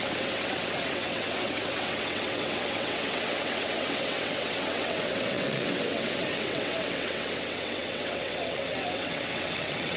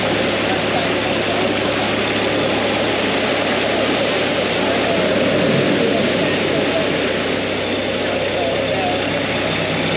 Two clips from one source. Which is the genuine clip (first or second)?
second